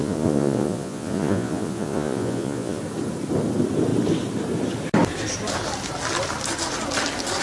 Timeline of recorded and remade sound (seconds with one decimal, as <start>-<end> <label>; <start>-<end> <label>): 0.0-2.8 remade; 2.8-7.4 recorded